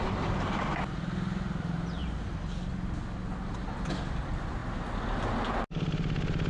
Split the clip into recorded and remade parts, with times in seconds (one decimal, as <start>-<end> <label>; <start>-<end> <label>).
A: 0.0-6.5 recorded